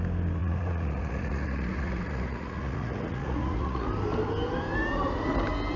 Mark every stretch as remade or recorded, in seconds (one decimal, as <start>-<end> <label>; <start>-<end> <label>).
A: 0.0-0.4 recorded; 0.4-3.9 remade; 3.9-5.8 recorded